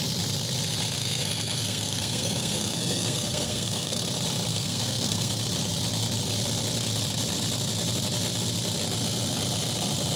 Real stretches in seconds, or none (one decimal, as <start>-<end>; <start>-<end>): 0.0-1.0; 4.0-4.5; 5.4-10.2